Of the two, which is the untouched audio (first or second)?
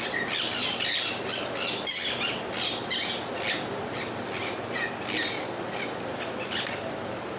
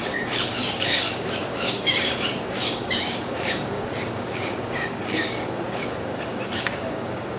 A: first